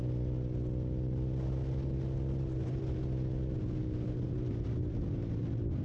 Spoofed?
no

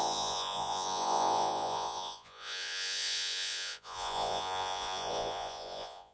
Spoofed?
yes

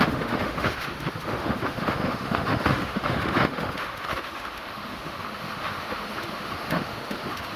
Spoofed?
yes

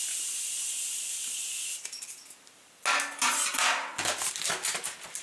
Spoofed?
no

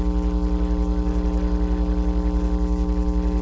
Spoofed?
no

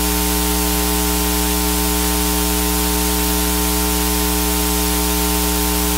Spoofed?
no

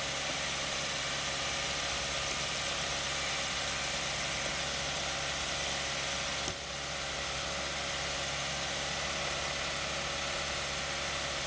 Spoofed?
no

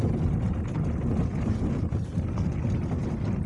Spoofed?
no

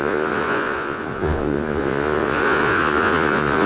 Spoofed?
yes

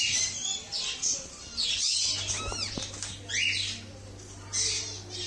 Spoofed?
no